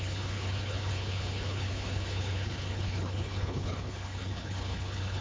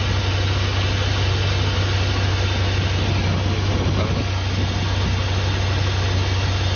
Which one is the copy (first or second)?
first